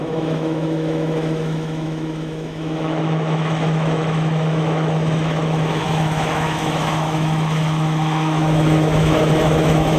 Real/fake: fake